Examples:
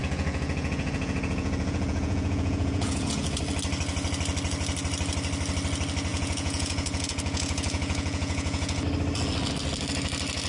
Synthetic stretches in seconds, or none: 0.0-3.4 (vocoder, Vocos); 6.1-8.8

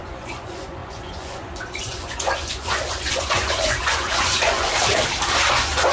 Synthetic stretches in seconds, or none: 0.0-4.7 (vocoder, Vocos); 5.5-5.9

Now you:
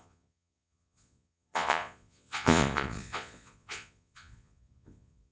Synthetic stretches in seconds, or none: 0.0-5.3 (vocoder, Vocos)